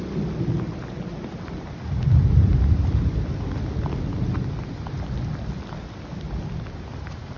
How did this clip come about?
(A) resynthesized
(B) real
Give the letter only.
B